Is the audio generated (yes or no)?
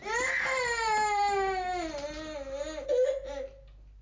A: no